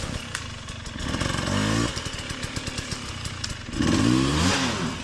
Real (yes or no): yes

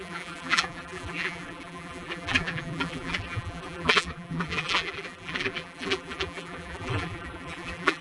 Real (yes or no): no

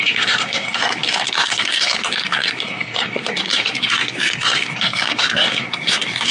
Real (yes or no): no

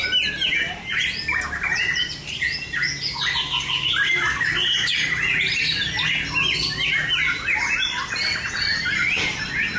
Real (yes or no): yes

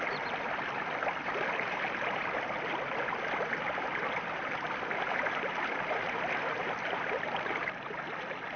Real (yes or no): yes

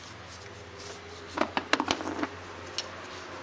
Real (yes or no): yes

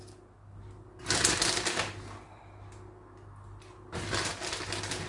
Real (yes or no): yes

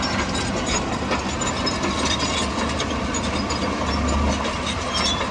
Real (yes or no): yes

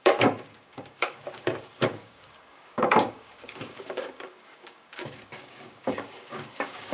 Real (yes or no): no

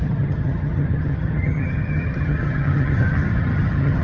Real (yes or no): no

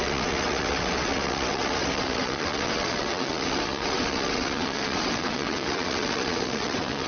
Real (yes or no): no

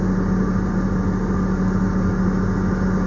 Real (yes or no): yes